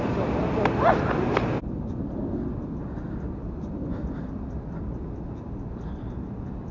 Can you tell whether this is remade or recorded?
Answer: recorded